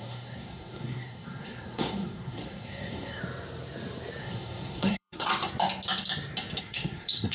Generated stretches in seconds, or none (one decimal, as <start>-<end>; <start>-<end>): 0.0-3.2; 4.2-5.3; 6.6-7.3